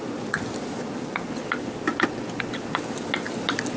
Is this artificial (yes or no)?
no